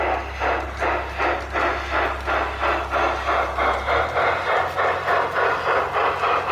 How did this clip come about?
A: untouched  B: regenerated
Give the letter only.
A